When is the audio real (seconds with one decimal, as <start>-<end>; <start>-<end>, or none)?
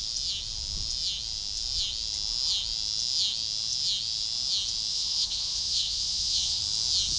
0.0-4.9; 6.6-7.2